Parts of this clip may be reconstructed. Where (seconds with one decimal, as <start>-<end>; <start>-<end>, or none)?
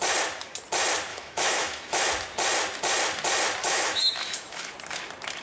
1.1-2.1; 3.6-4.7